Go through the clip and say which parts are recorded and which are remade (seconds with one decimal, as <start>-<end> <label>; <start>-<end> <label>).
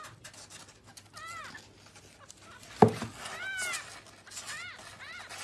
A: 0.0-5.4 recorded